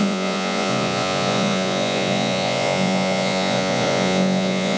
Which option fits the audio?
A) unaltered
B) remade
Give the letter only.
B